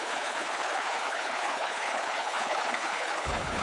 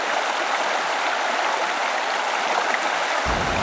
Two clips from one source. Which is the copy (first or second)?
first